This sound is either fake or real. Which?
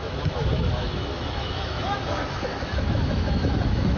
fake